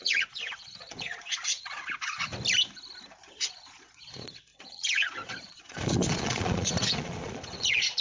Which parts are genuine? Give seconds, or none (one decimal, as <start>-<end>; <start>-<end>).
2.3-3.2